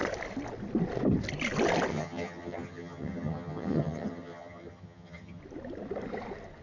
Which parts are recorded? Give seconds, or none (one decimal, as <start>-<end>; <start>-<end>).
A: 0.0-1.9; 5.4-6.6